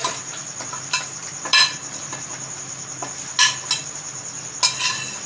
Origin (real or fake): real